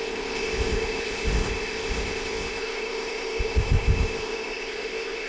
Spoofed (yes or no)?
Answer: yes